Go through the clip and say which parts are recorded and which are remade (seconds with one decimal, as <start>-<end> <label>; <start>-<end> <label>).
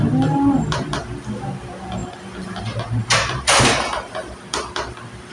0.0-5.3 recorded